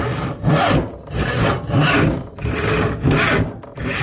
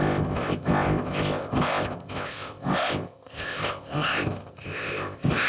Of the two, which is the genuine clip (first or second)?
first